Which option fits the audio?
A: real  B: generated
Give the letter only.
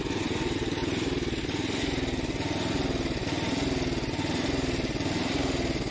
A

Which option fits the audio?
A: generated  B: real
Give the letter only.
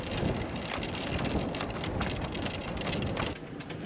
B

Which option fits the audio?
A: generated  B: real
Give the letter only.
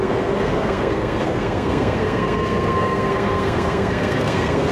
A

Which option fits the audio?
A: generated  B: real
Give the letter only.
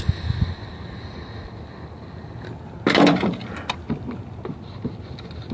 B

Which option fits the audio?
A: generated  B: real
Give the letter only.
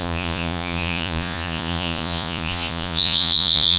A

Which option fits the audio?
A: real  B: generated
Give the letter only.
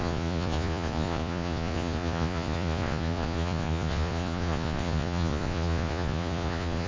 B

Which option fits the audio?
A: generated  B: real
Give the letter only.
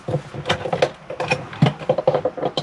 B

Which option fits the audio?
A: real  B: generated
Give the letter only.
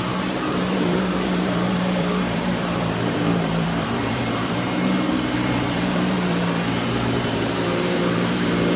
B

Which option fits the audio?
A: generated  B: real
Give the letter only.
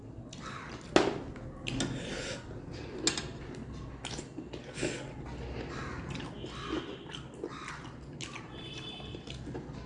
B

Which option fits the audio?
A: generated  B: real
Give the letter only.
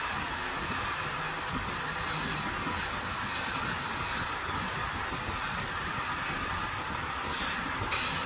B